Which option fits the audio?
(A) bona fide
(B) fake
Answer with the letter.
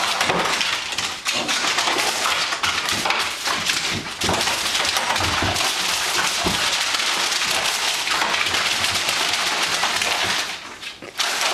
A